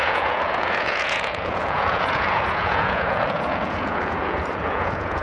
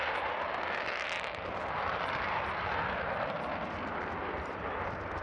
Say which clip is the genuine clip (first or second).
second